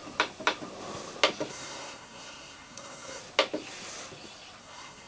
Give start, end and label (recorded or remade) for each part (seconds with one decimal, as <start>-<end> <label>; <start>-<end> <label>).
0.0-1.5 recorded; 1.5-3.2 remade; 3.2-4.6 recorded; 4.6-5.1 remade